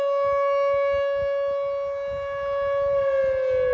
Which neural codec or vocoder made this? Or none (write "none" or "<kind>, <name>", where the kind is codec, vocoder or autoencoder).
none